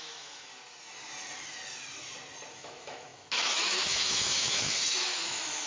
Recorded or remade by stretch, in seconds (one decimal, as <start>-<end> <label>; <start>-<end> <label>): 0.0-0.5 remade; 0.5-2.5 recorded; 2.5-5.7 remade